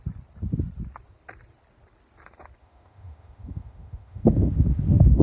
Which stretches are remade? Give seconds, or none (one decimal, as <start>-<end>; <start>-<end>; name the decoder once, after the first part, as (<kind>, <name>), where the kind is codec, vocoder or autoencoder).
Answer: 2.6-5.2 (autoencoder, DAC-VAE)